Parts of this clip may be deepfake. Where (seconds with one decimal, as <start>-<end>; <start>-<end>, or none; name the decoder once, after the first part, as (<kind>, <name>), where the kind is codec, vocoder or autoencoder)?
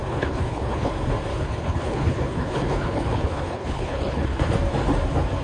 0.0-0.9 (codec, HILCodec); 1.3-4.5